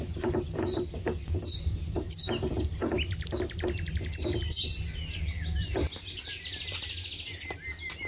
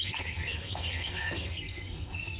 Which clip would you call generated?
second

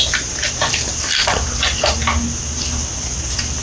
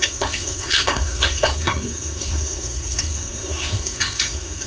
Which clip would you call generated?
second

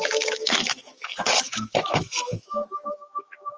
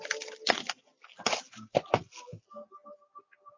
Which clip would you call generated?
first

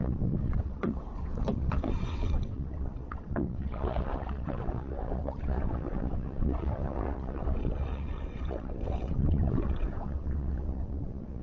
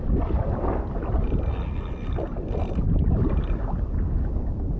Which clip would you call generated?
first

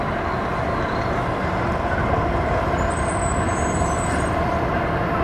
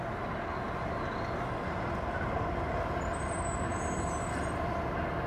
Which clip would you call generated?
first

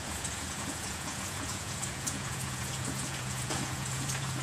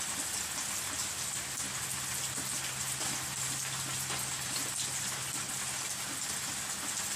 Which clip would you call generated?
first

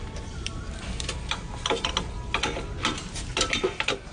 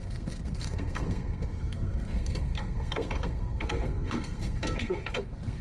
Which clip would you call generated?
second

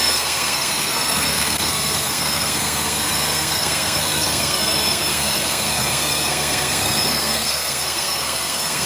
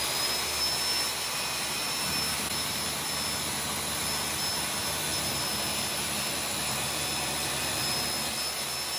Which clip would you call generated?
first